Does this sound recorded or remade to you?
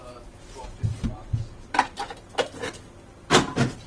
recorded